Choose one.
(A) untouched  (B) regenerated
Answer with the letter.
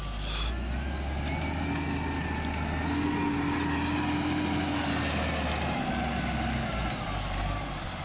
A